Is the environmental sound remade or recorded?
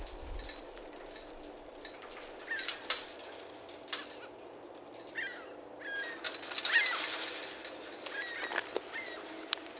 recorded